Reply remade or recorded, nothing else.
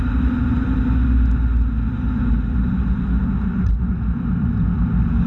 recorded